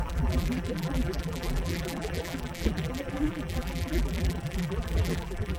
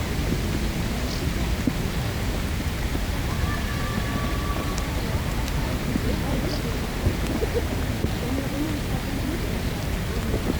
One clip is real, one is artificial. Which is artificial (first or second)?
first